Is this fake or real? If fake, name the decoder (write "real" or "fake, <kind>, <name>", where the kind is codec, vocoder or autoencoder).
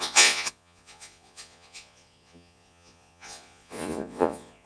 fake, vocoder, Vocos